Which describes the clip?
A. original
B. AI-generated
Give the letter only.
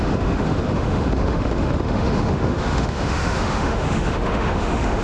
B